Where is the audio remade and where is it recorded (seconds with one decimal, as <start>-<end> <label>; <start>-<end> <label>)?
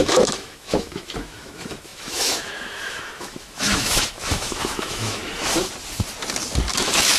0.0-5.2 remade; 5.2-6.7 recorded; 6.7-7.2 remade